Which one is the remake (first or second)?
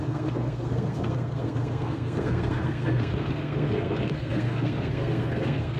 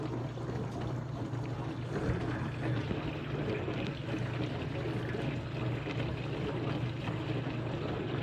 first